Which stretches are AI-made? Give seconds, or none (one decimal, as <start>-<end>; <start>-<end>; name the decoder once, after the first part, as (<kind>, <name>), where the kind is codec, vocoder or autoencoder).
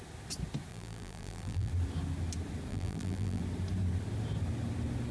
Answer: 0.7-1.7 (vocoder, BigVGAN v2); 2.7-3.4